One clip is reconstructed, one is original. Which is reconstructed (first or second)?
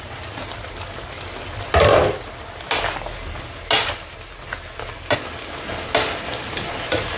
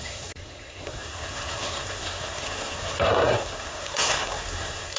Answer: second